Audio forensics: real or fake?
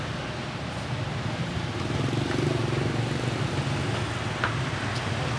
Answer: real